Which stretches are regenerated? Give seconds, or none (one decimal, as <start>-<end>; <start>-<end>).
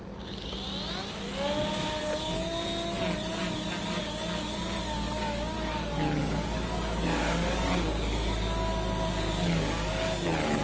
none